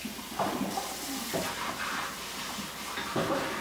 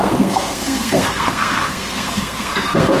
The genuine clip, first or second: first